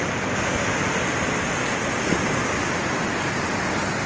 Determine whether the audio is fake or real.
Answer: real